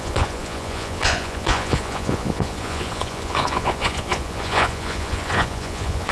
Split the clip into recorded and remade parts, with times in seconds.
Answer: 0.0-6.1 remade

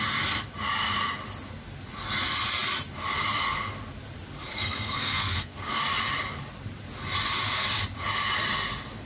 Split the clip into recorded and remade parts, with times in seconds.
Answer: 0.0-4.5 recorded; 4.5-5.8 remade; 5.8-9.1 recorded